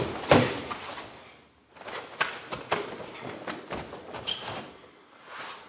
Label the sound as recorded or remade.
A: recorded